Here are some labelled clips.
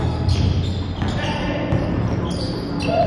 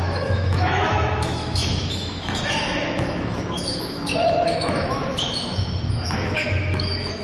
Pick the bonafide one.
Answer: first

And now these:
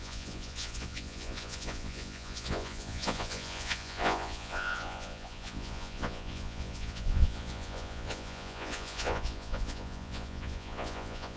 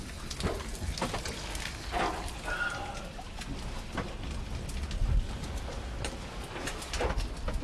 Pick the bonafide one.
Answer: second